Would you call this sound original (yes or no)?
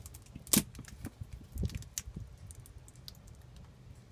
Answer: yes